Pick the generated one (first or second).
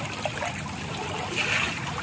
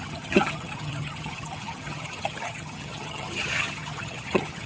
second